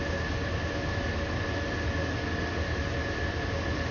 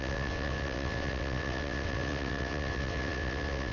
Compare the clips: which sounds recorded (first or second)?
first